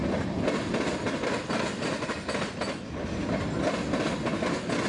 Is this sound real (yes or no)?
yes